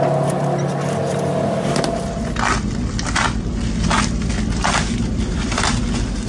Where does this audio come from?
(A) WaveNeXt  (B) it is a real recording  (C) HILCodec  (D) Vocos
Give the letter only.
B